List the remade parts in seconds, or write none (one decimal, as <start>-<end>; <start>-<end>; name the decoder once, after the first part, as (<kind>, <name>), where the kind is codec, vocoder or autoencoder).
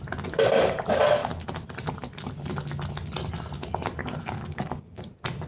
4.0-5.0 (codec, DAC)